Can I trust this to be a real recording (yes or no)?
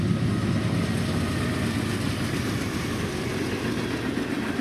yes